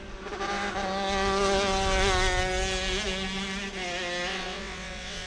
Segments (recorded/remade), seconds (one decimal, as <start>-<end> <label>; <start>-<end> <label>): 0.0-4.3 recorded; 4.3-5.3 remade